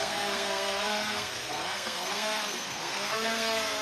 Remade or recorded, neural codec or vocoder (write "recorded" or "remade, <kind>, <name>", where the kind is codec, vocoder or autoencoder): remade, codec, SNAC